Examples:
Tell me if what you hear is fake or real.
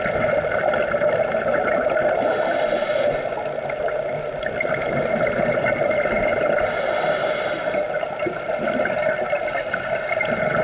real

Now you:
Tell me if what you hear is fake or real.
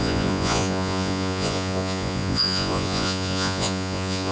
fake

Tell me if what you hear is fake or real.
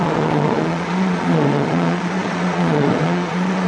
fake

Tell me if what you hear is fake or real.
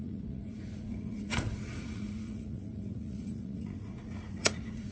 fake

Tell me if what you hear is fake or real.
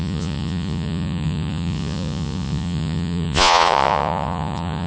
fake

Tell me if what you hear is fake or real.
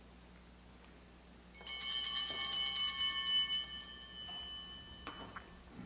real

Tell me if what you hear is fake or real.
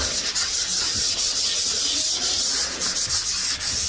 real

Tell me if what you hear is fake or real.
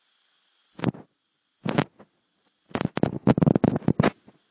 real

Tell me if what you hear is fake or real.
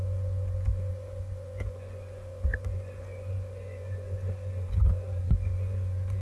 fake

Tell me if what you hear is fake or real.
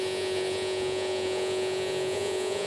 fake